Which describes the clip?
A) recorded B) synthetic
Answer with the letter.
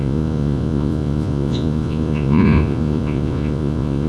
B